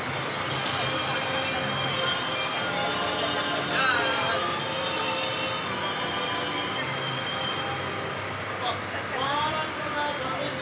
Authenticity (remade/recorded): recorded